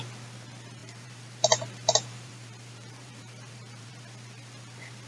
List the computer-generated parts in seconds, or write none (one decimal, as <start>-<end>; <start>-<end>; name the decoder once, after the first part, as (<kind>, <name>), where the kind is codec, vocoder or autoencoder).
0.8-3.9 (vocoder, BigVGAN v2)